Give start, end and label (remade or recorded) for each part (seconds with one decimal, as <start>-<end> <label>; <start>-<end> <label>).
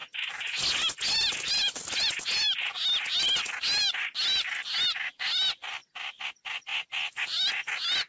0.0-8.1 recorded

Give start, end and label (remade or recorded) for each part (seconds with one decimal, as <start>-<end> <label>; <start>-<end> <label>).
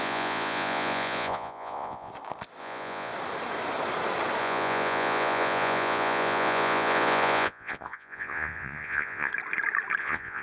0.0-2.1 remade; 2.1-2.6 recorded; 2.6-3.1 remade; 3.1-4.4 recorded; 4.4-9.3 remade; 9.3-10.0 recorded; 10.0-10.4 remade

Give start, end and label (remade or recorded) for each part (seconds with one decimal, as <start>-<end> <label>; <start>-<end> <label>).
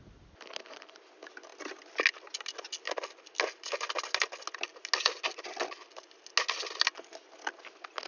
0.0-8.1 recorded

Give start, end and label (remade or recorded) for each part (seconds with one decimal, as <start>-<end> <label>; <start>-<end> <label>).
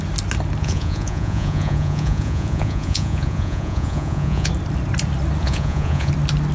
0.0-0.6 recorded; 0.6-4.5 remade; 4.5-5.4 recorded; 5.4-6.1 remade; 6.1-6.5 recorded